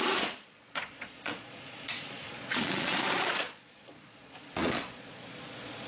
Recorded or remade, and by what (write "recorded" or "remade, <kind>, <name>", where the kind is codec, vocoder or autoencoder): remade, vocoder, Vocos